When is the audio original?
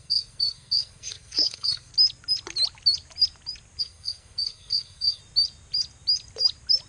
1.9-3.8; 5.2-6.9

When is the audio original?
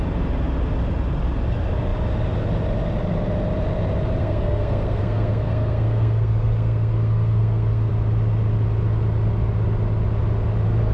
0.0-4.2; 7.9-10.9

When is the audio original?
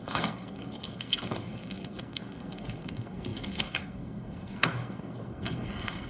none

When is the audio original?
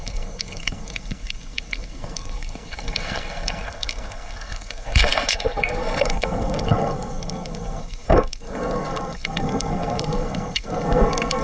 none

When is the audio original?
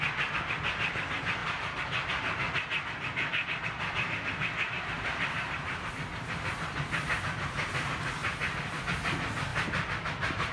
0.0-10.5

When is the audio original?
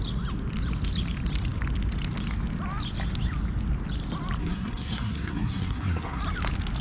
0.0-4.4; 6.2-6.8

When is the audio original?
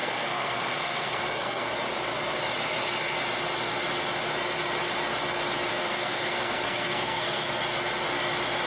1.7-5.7; 7.6-8.7